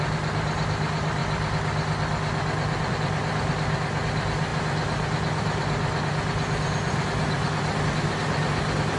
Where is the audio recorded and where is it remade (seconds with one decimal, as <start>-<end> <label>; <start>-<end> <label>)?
0.0-9.0 recorded